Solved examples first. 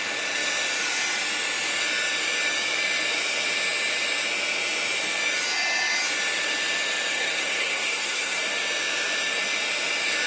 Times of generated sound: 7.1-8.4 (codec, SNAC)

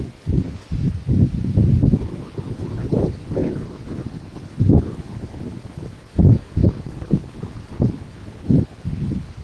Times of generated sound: 0.0-0.7 (codec, HILCodec); 2.0-9.4

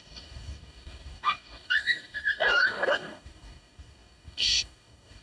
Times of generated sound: 0.0-5.2 (codec, DAC)